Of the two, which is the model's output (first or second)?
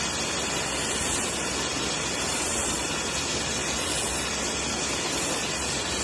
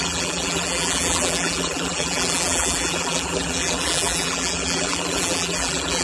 second